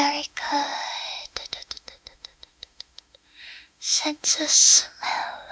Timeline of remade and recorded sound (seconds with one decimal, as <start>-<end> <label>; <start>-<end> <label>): 0.0-5.5 remade